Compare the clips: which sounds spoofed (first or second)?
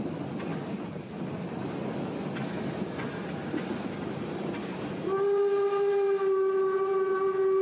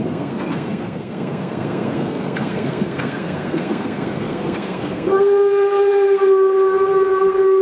second